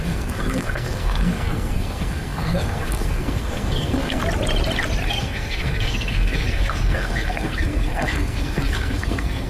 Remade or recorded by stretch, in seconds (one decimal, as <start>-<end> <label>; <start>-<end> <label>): 0.0-4.2 remade; 4.2-5.1 recorded; 5.1-9.5 remade